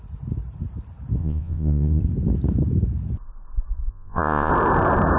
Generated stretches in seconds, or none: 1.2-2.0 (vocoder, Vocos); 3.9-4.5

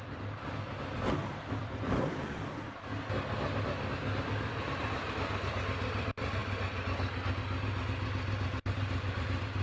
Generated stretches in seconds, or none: 0.0-2.9 (vocoder, BigVGAN v2); 3.9-6.4; 8.7-9.6

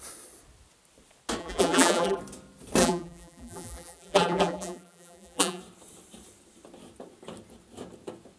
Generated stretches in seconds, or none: 1.4-2.2 (vocoder, BigVGAN v2); 2.8-5.6

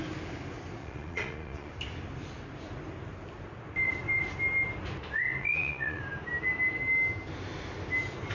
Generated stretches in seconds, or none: 0.8-1.7 (vocoder, Vocos); 5.4-6.0

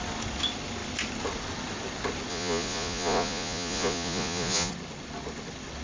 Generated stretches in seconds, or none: 2.3-4.7 (vocoder, Vocos)

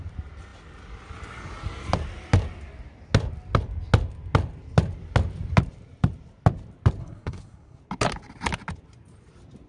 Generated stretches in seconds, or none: 7.0-7.8 (codec, SNAC)